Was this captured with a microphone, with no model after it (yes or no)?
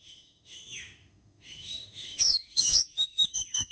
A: no